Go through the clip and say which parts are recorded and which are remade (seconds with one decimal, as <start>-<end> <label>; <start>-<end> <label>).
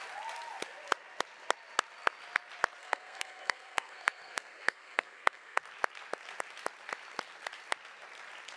0.0-2.8 recorded; 2.8-5.6 remade; 5.6-8.6 recorded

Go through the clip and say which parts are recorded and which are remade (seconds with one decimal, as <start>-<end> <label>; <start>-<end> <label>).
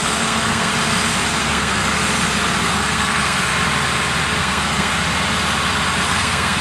0.0-0.7 remade; 0.7-1.4 recorded; 1.4-2.0 remade; 2.0-2.6 recorded; 2.6-3.5 remade; 3.5-4.4 recorded; 4.4-4.9 remade; 4.9-6.1 recorded; 6.1-6.6 remade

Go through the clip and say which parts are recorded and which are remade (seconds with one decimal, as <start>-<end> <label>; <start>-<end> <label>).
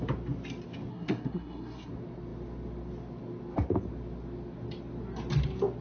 0.0-0.9 recorded; 0.9-1.9 remade; 1.9-5.8 recorded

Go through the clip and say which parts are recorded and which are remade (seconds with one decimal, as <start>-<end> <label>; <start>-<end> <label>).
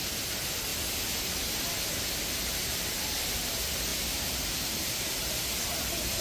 0.0-6.2 recorded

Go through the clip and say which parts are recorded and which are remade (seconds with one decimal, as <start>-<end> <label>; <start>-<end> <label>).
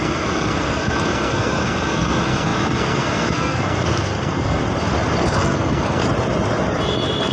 0.0-4.6 remade; 4.6-5.2 recorded; 5.2-6.0 remade; 6.0-7.3 recorded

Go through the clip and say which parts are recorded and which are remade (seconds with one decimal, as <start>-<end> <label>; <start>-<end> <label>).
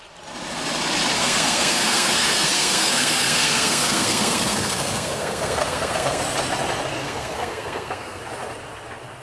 0.0-1.2 recorded; 1.2-6.2 remade; 6.2-7.0 recorded; 7.0-8.2 remade; 8.2-9.2 recorded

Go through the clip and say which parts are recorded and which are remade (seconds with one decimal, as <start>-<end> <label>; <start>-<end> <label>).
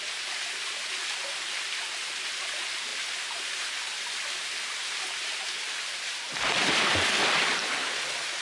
0.0-8.4 recorded